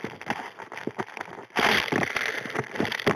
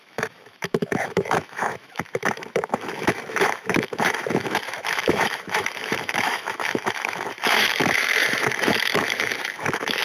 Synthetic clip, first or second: second